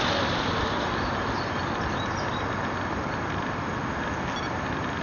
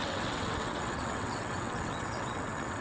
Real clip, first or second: first